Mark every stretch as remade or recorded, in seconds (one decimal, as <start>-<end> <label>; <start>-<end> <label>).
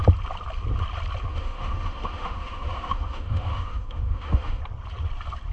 0.0-1.3 recorded; 1.3-4.6 remade; 4.6-5.5 recorded